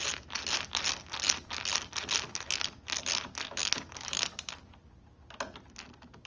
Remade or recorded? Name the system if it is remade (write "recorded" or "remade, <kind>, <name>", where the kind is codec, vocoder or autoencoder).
recorded